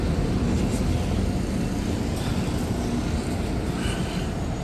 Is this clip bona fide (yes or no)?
yes